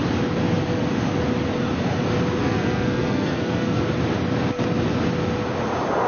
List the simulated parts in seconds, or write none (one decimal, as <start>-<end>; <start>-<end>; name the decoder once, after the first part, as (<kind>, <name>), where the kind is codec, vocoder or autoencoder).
2.4-3.8 (codec, SNAC)